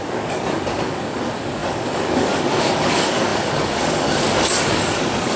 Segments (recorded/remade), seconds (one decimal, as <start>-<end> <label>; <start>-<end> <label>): 0.0-5.4 remade